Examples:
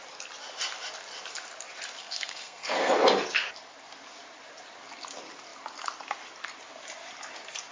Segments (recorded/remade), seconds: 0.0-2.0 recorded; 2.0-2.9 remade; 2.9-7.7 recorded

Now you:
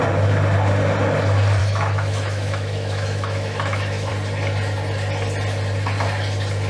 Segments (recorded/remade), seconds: 0.0-1.6 recorded; 1.6-4.1 remade; 4.1-6.7 recorded

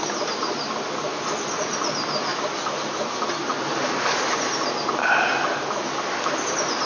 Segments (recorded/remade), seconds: 0.0-6.9 recorded

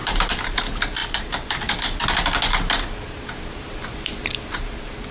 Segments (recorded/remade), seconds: 0.0-0.6 remade; 0.6-1.0 recorded; 1.0-1.6 remade; 1.6-3.6 recorded; 3.6-4.2 remade; 4.2-5.1 recorded

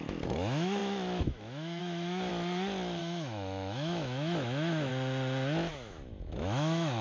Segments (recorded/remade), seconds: 0.0-2.3 remade; 2.3-3.0 recorded; 3.0-4.9 remade; 4.9-5.7 recorded; 5.7-7.0 remade

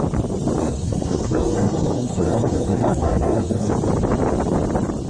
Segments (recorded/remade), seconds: 0.0-0.6 recorded; 0.6-3.7 remade; 3.7-5.1 recorded

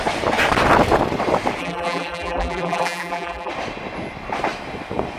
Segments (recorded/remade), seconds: 0.0-1.6 recorded; 1.6-3.5 remade; 3.5-5.2 recorded

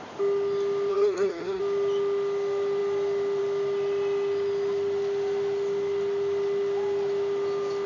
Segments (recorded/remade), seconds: 0.0-0.9 recorded; 0.9-1.6 remade; 1.6-7.9 recorded